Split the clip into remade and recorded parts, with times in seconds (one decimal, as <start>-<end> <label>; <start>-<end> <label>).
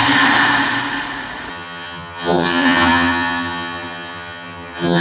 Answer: 0.0-1.5 recorded; 1.5-5.0 remade